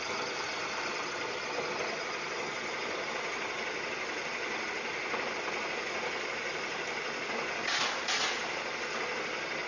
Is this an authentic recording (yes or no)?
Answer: yes